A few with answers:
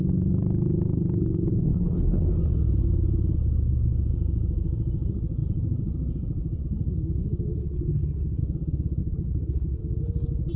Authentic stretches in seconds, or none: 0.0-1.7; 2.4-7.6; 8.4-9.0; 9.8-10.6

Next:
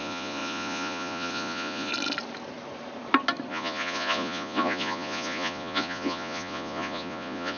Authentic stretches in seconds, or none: 1.9-3.5